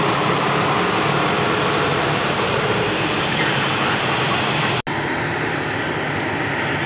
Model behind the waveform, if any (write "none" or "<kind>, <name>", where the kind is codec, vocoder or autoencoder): none